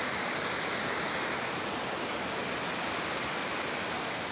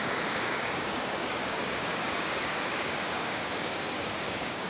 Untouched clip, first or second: first